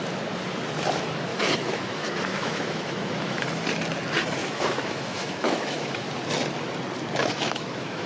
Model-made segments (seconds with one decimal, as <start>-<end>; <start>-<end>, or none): 1.3-3.4; 4.4-6.0; 7.2-8.1